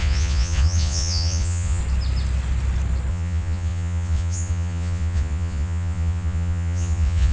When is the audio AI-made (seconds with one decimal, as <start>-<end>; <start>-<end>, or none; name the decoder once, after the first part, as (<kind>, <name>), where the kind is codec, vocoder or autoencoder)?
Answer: 0.0-1.8 (vocoder, Vocos); 3.1-7.3